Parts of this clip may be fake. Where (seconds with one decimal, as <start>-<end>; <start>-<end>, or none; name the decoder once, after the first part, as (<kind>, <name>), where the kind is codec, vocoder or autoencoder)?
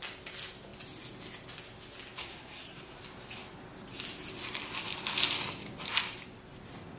2.2-3.0 (codec, SNAC)